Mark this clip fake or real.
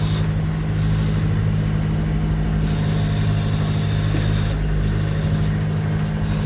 real